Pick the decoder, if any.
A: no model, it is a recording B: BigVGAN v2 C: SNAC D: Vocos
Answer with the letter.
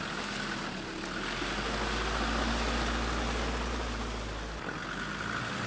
A